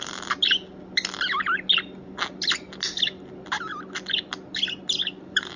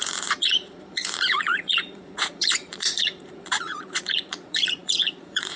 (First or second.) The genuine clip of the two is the first